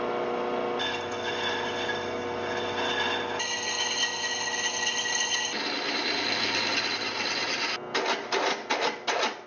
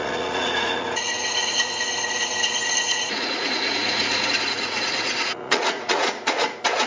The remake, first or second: second